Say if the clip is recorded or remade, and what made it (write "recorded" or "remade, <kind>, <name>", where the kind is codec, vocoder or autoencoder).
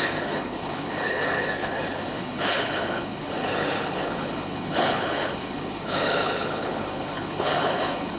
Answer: remade, codec, HILCodec